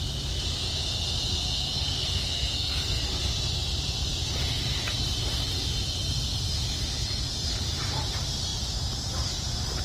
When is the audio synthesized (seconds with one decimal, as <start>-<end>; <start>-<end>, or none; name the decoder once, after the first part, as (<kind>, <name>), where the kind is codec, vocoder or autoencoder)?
1.7-3.2 (codec, SNAC)